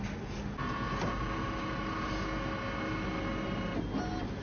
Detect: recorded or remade recorded